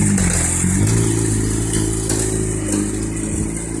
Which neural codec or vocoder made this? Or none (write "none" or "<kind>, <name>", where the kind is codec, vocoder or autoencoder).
none